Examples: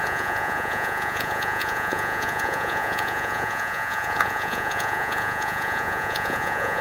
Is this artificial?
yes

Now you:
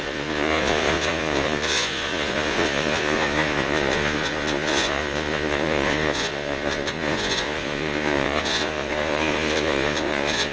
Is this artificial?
yes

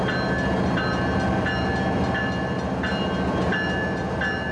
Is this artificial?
no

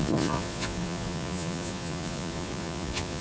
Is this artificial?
yes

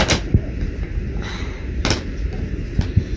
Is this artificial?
no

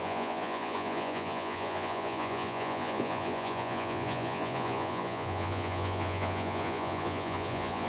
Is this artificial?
yes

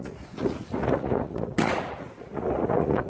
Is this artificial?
yes